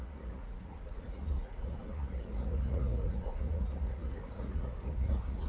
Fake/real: fake